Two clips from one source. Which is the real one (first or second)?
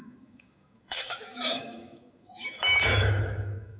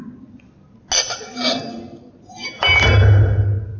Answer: second